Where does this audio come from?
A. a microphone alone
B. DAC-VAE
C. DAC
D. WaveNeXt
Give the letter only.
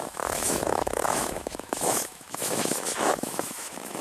B